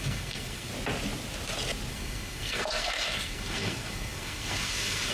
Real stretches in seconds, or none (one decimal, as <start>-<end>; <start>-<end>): 0.7-1.9